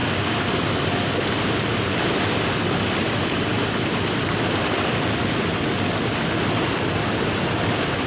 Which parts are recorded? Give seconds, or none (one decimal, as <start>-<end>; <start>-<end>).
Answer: 0.5-8.1